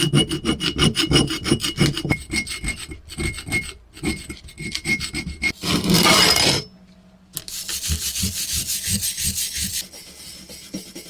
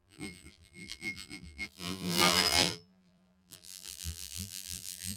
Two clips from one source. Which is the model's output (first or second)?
second